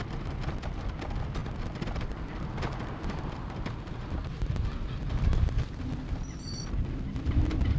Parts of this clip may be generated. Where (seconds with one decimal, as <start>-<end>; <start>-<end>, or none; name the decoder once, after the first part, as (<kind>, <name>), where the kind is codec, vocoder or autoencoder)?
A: 1.4-5.9 (vocoder, BigVGAN v2)